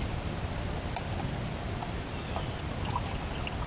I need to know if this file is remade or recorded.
recorded